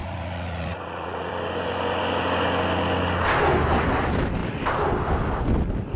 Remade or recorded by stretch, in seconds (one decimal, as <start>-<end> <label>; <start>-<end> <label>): 0.0-1.3 remade; 1.3-6.0 recorded